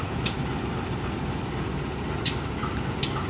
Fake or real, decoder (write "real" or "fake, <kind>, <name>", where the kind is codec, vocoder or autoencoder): real